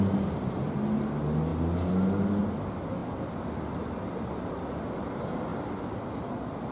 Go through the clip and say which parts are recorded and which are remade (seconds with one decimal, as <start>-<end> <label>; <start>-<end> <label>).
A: 0.0-6.7 recorded